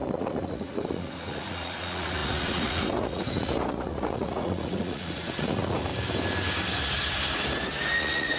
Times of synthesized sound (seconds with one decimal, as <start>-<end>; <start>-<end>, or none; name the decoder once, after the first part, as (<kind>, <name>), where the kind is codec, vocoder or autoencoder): 0.0-5.9 (vocoder, Vocos); 8.0-8.4